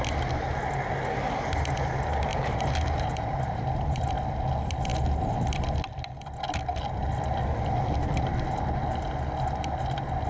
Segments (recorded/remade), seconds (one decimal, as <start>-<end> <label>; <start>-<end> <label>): 0.0-2.3 recorded; 2.3-4.1 remade; 4.1-10.3 recorded